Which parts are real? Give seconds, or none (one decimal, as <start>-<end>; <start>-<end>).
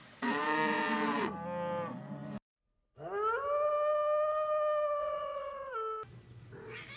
1.3-5.0; 5.7-7.0